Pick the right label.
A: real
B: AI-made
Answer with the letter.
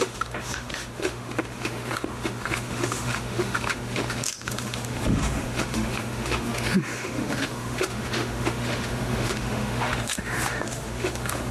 B